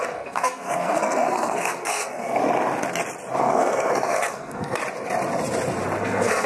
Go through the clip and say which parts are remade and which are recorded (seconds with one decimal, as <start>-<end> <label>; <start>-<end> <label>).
0.0-2.4 remade; 2.4-3.4 recorded; 3.4-4.8 remade; 4.8-6.0 recorded; 6.0-6.5 remade